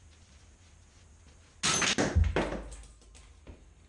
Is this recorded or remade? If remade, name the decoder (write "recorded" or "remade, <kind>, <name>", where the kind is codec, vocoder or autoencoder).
recorded